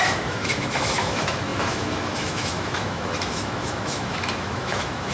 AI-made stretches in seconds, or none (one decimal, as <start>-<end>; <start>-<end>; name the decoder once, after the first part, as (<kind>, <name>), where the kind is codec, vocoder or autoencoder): 0.0-5.1 (autoencoder, DAC-VAE)